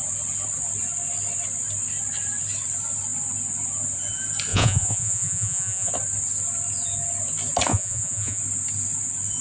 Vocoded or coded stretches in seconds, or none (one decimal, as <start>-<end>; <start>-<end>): 4.5-5.9; 7.7-8.4

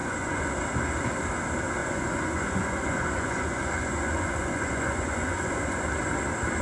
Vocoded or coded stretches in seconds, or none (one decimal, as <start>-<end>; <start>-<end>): 0.0-0.5; 1.8-5.8

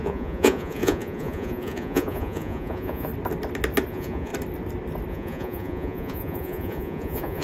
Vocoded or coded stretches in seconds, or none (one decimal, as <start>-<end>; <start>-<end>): 0.0-3.1; 3.9-4.3; 5.1-7.4

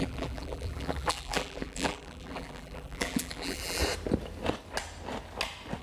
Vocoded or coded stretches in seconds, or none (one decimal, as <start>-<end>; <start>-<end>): 0.0-3.8

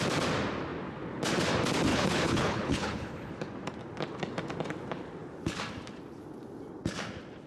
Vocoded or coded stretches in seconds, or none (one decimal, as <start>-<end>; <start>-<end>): 1.9-3.3

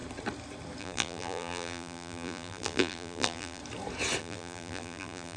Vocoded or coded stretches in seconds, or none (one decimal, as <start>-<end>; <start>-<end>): 0.8-3.6; 4.2-5.4

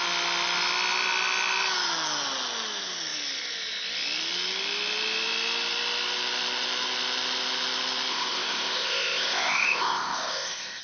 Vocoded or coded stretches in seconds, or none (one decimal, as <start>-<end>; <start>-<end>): 8.1-10.8